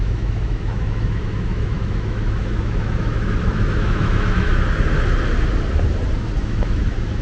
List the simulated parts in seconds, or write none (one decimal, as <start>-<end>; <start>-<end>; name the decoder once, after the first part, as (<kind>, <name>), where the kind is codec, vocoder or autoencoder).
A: 0.0-4.5 (autoencoder, DAC-VAE); 6.4-7.2